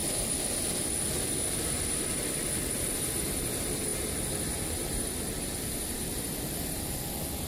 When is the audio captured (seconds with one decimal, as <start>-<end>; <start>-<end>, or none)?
0.0-2.6